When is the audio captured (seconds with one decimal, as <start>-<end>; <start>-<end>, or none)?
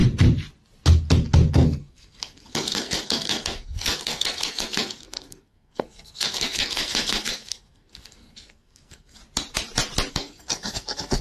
0.0-1.5; 9.2-10.1